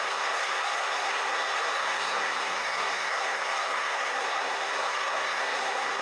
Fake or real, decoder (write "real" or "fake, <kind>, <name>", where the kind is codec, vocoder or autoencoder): fake, codec, SNAC